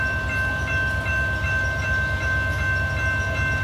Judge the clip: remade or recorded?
recorded